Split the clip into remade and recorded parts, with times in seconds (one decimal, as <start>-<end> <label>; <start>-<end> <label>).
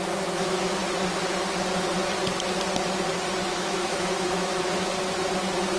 0.0-3.5 recorded; 3.5-5.0 remade; 5.0-5.8 recorded